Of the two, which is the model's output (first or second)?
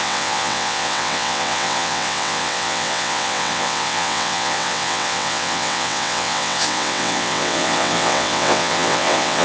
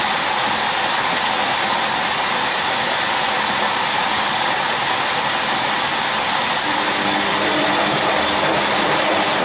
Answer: first